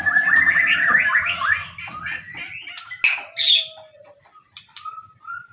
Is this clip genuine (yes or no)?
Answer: yes